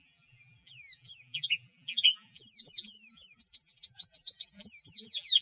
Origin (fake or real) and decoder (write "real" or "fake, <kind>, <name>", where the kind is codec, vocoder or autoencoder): fake, vocoder, BigVGAN v2